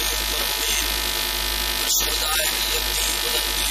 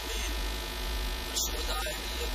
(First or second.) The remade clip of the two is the second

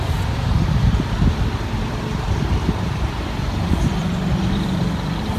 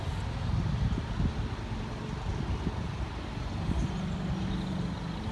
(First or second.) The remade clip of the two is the first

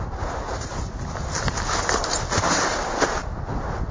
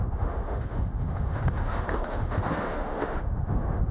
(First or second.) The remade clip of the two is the second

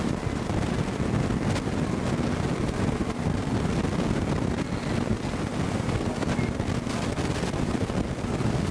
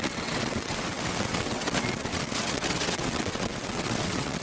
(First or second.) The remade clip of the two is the second